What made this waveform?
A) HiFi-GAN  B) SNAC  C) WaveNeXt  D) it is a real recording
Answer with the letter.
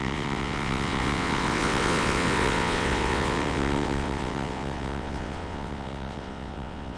C